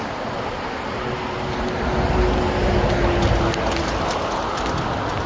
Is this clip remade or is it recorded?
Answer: recorded